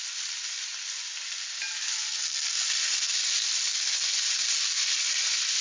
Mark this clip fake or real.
real